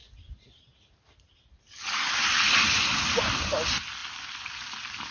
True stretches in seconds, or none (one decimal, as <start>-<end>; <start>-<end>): 0.0-5.1